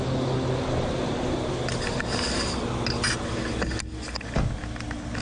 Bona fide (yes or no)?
yes